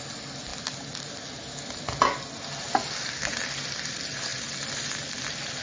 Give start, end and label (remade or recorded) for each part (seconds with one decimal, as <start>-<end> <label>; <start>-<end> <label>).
0.0-5.6 recorded